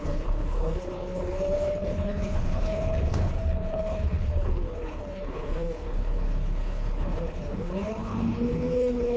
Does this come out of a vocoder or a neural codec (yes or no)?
yes